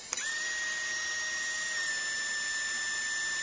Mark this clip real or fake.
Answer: real